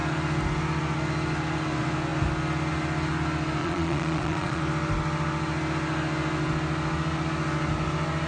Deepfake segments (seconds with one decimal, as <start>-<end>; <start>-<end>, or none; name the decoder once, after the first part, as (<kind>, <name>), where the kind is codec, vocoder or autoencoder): 3.6-4.6 (vocoder, Vocos)